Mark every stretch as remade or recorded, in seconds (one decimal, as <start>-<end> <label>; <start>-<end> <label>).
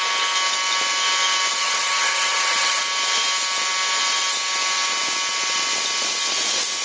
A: 0.0-1.5 recorded; 1.5-2.8 remade; 2.8-6.8 recorded